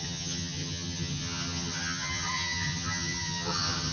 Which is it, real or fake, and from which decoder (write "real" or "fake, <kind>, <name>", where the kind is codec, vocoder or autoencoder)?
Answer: fake, vocoder, HiFi-GAN